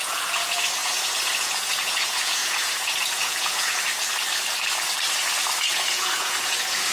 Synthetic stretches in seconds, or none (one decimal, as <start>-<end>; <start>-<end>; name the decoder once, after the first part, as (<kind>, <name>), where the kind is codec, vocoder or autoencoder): 0.0-3.7 (vocoder, Vocos); 5.7-6.9